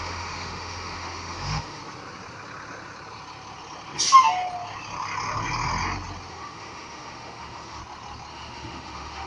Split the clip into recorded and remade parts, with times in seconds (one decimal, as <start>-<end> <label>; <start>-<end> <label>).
0.0-1.8 remade; 1.8-6.3 recorded; 6.3-7.8 remade; 7.8-8.3 recorded; 8.3-9.3 remade